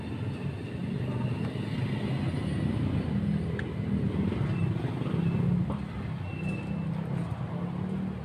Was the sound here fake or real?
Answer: real